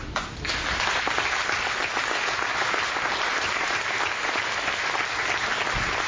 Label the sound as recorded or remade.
recorded